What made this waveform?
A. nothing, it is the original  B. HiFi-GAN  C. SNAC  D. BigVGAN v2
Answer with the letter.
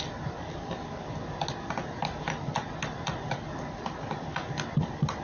A